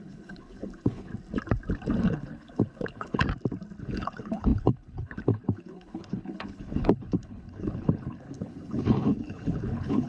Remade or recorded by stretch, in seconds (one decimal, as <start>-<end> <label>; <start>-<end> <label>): 0.0-1.1 remade; 1.1-2.0 recorded; 2.0-3.2 remade; 3.2-3.8 recorded; 3.8-10.1 remade